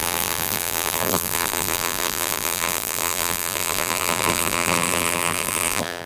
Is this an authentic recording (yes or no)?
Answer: no